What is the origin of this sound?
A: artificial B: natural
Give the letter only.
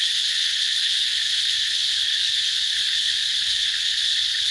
A